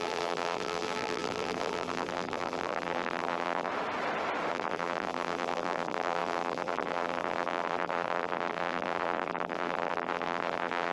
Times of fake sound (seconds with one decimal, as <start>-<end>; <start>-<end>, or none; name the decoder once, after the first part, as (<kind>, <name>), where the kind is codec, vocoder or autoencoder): 0.0-3.7 (vocoder, BigVGAN v2); 4.5-10.9